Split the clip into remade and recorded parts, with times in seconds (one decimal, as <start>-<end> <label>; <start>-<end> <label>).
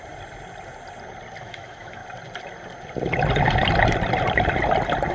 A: 0.0-1.4 recorded; 1.4-2.0 remade; 2.0-5.1 recorded